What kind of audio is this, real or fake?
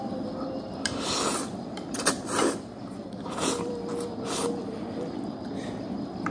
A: fake